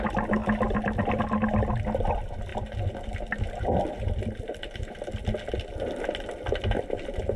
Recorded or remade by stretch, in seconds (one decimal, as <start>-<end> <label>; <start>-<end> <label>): 0.0-7.4 recorded